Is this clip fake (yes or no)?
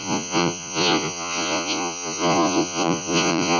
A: yes